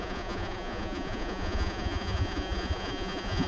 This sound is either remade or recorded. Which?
remade